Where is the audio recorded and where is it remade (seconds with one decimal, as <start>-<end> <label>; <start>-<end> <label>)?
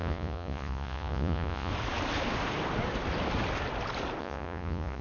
0.0-1.7 remade; 1.7-4.2 recorded; 4.2-5.0 remade